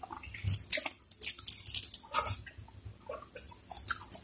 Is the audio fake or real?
real